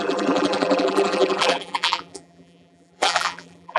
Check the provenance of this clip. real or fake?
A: fake